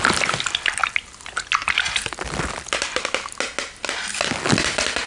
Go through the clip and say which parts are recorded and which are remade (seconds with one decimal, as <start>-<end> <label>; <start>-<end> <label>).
0.0-5.1 recorded